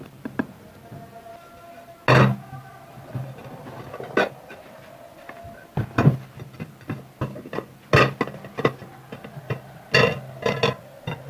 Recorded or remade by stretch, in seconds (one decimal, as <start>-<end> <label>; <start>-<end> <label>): 0.0-11.3 recorded